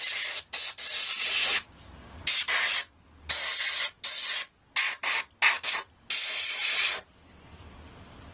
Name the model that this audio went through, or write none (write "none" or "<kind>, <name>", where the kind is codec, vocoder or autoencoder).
none